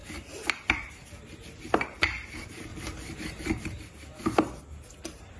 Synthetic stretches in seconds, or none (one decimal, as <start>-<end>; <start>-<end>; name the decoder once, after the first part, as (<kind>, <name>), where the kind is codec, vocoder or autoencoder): 0.0-4.1 (vocoder, BigVGAN v2); 4.8-5.4